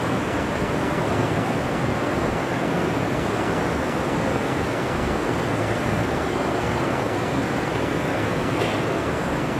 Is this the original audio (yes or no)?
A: no